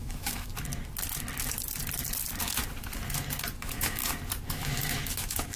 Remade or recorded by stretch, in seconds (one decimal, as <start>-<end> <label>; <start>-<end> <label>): 0.0-0.5 remade; 0.5-3.6 recorded; 3.6-4.0 remade; 4.0-4.5 recorded; 4.5-5.6 remade